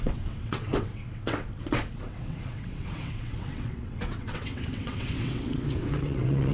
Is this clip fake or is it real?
fake